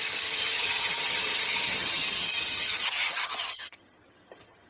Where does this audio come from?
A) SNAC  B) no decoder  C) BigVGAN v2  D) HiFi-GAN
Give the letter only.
D